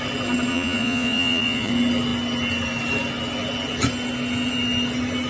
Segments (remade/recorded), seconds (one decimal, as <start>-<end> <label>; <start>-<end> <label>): 0.0-0.5 recorded; 0.5-1.7 remade; 1.7-5.3 recorded